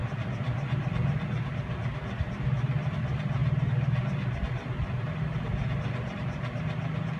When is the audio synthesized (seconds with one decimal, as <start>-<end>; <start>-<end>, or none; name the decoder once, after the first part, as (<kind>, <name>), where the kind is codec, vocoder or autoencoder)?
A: 0.0-3.4 (vocoder, BigVGAN v2); 5.8-7.2